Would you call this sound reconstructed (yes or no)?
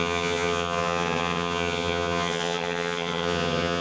yes